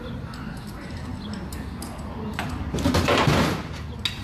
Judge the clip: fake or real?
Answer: real